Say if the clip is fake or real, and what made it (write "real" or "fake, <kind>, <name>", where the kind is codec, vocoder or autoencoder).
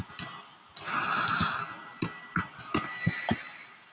real